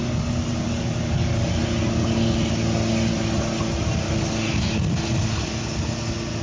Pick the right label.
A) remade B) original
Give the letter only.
B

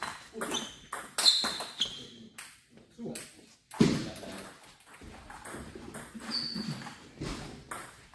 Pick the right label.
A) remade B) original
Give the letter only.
B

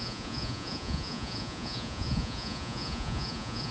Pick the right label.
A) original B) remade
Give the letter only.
B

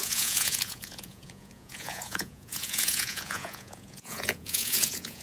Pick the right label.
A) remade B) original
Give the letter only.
A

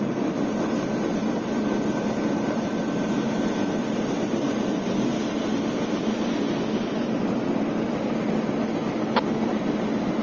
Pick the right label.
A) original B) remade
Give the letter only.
A